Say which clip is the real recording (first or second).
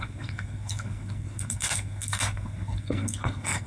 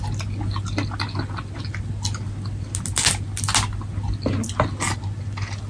second